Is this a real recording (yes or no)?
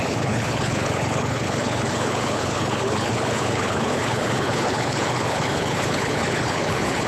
no